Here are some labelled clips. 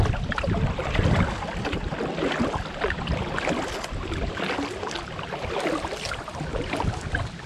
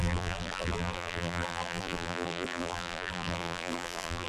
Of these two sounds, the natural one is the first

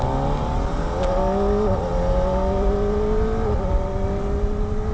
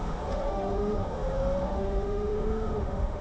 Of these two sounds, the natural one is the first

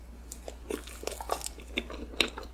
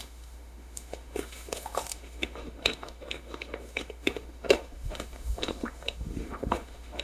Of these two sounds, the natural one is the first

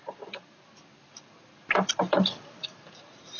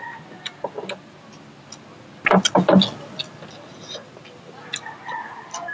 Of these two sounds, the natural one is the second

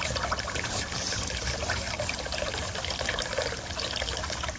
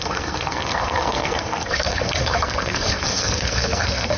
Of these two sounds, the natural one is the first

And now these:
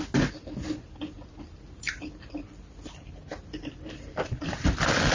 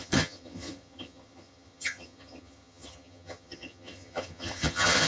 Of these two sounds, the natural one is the first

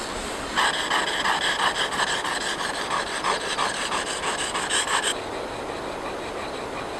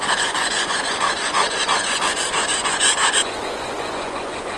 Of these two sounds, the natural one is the first